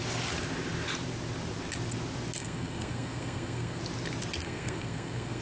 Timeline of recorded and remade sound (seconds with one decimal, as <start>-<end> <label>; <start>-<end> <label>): 0.0-2.4 recorded; 2.4-3.8 remade; 3.8-4.4 recorded; 4.4-5.4 remade